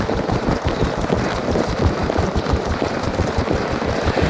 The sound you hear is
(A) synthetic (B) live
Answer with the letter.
A